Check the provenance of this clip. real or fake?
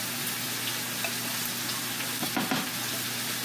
real